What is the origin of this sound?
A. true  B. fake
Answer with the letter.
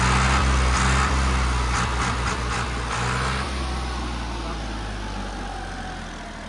A